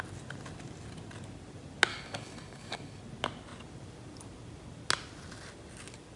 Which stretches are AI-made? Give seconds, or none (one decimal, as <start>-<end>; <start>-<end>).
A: 1.9-3.0